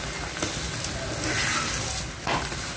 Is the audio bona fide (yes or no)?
yes